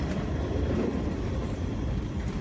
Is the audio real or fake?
real